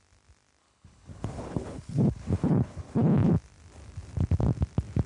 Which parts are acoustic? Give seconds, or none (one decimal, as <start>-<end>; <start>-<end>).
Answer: 0.0-0.6; 3.1-5.1